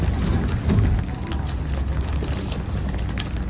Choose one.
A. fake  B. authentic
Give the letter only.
B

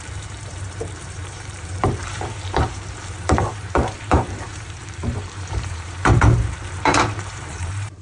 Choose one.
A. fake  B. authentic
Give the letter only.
A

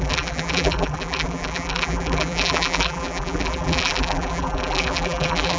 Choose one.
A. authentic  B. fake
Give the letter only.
B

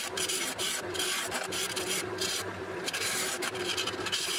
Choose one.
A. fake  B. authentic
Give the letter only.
A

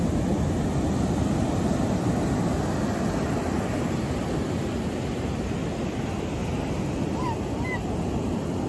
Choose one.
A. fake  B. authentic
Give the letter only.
B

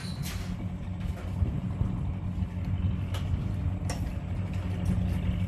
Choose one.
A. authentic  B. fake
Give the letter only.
A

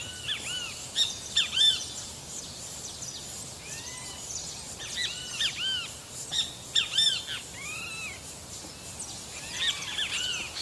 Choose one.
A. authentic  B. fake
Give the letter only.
A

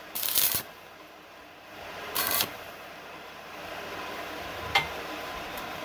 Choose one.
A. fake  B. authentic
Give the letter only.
A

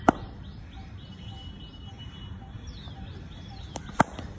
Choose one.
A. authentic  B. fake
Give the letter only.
B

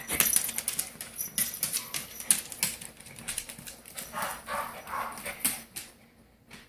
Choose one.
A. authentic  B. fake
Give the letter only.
A